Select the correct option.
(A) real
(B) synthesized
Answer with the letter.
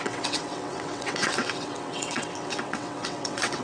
B